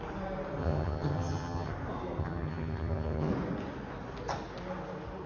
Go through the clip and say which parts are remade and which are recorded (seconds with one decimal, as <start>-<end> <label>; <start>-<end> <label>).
0.0-0.6 recorded; 0.6-1.7 remade; 1.7-2.2 recorded; 2.2-3.3 remade; 3.3-5.3 recorded